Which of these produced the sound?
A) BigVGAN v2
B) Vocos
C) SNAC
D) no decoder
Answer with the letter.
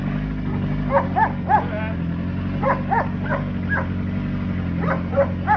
D